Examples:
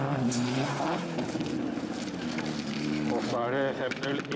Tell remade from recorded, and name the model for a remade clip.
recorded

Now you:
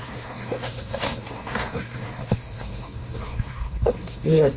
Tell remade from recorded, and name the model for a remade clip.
remade, codec, SNAC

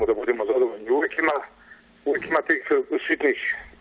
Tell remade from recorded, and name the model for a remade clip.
recorded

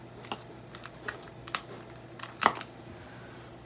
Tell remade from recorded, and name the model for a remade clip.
recorded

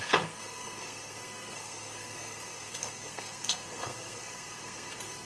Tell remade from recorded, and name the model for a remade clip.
remade, codec, SNAC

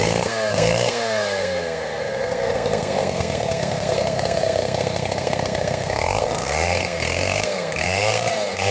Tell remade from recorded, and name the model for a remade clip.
remade, codec, SNAC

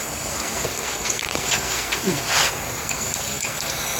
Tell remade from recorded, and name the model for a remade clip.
remade, codec, SNAC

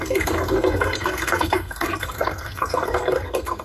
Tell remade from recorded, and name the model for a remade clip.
remade, codec, SNAC